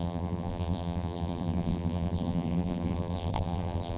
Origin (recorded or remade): remade